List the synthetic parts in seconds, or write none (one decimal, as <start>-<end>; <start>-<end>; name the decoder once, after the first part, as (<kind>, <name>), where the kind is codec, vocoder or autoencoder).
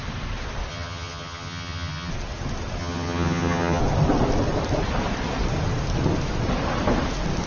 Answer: 0.7-2.1 (vocoder, HiFi-GAN); 2.8-3.8